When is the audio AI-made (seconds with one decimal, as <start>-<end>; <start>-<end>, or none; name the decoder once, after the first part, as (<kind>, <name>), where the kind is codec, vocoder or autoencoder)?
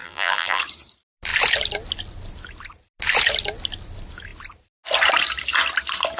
0.0-0.6 (vocoder, BigVGAN v2)